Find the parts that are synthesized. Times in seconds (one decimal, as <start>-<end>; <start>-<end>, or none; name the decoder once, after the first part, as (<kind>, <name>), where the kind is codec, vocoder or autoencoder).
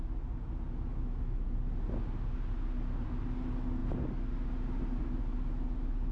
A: none